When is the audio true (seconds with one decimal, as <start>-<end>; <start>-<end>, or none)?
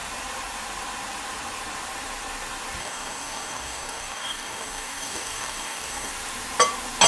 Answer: 0.0-2.8; 6.1-7.1